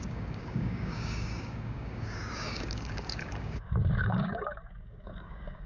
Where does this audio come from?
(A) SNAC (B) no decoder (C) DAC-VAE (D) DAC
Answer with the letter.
D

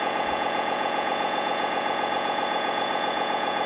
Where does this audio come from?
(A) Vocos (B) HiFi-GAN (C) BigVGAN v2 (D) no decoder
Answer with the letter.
A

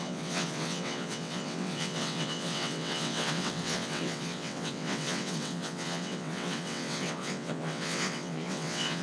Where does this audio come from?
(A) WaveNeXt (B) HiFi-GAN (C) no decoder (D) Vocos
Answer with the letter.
A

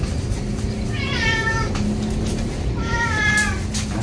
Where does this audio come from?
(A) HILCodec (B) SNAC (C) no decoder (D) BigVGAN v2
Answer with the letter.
C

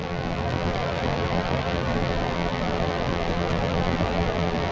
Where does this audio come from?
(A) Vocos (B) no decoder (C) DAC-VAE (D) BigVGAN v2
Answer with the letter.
D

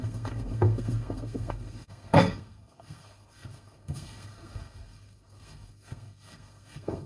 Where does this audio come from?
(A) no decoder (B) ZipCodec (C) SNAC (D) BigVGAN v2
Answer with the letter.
C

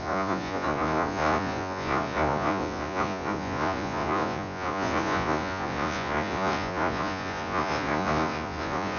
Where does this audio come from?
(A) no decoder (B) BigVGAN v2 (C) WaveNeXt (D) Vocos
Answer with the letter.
D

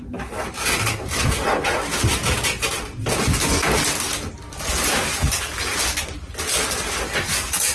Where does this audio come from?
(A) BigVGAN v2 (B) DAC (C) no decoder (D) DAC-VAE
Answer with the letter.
C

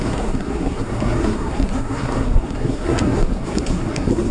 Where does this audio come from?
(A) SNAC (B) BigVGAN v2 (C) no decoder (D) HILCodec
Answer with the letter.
A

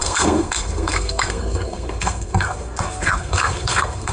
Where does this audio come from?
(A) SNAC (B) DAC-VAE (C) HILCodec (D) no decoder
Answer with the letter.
A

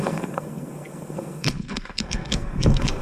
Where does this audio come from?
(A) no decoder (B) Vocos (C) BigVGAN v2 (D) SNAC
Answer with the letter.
D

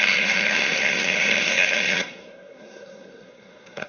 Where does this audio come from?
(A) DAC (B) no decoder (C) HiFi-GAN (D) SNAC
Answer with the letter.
D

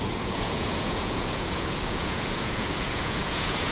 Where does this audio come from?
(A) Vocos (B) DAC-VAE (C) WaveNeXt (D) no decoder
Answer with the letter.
A